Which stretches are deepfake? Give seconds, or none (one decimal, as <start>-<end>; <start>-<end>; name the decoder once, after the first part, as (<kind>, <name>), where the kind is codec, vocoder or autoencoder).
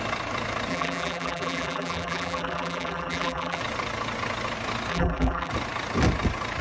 0.7-3.6 (vocoder, BigVGAN v2); 4.9-5.5